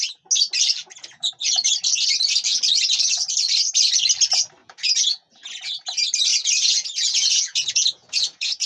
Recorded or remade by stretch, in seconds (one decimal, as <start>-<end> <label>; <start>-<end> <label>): 0.0-0.8 recorded; 0.8-1.7 remade; 1.7-4.6 recorded; 4.6-5.7 remade; 5.7-6.3 recorded; 6.3-8.7 remade